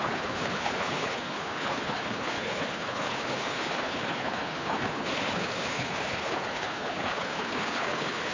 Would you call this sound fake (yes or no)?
yes